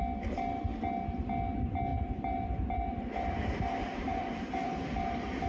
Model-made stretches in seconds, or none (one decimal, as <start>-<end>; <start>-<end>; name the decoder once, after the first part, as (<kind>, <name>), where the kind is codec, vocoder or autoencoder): 1.9-4.8 (vocoder, BigVGAN v2)